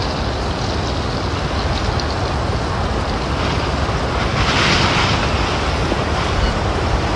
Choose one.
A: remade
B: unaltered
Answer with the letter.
B